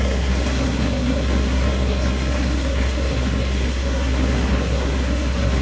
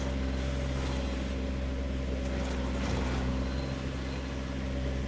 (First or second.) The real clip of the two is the second